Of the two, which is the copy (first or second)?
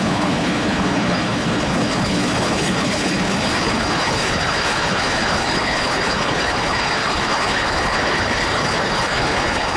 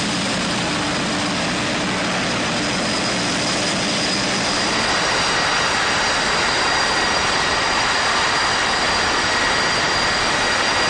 first